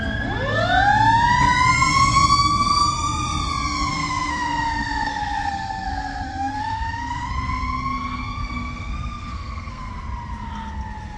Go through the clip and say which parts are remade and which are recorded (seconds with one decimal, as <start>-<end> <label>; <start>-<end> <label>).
0.0-3.9 recorded; 3.9-7.3 remade; 7.3-8.4 recorded; 8.4-9.9 remade; 9.9-11.2 recorded